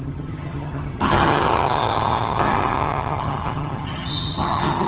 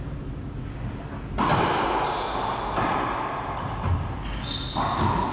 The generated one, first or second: first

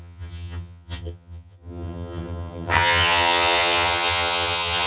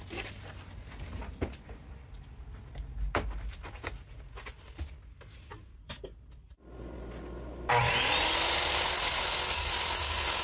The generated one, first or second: first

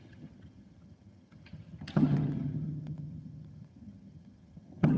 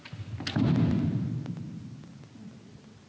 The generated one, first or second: first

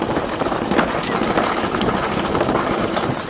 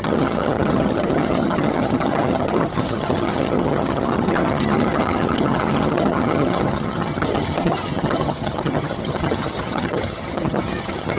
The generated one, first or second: second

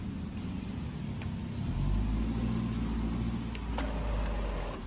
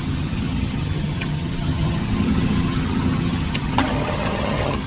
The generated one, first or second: second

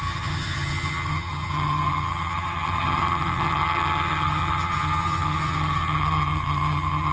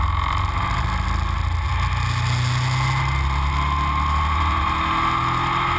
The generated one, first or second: first